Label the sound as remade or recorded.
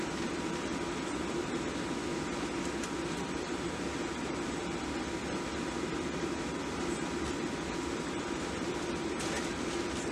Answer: remade